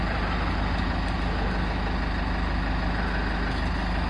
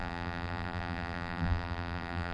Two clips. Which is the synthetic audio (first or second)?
second